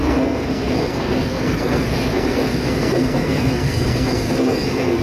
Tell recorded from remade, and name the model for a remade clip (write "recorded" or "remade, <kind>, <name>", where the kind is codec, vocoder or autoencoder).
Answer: remade, codec, SNAC